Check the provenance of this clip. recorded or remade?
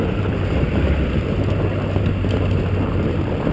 recorded